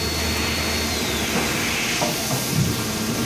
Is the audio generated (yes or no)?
no